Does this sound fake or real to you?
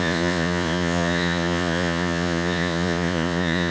fake